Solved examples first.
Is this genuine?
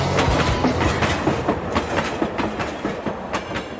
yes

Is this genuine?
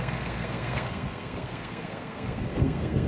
no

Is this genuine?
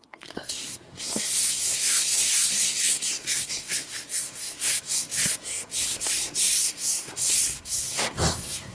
no